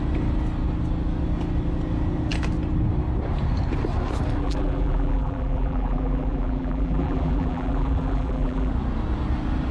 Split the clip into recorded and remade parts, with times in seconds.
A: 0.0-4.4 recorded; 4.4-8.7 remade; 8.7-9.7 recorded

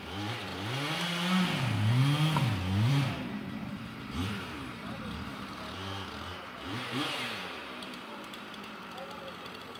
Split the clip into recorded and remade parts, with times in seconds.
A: 0.0-0.5 remade; 0.5-2.9 recorded; 2.9-9.8 remade